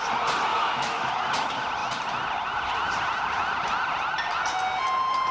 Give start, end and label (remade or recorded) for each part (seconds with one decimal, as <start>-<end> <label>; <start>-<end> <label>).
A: 0.0-0.5 recorded; 0.5-1.1 remade; 1.1-5.3 recorded